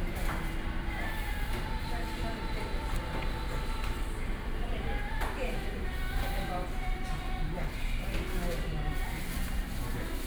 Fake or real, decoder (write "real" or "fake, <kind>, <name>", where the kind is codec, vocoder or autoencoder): fake, vocoder, BigVGAN v2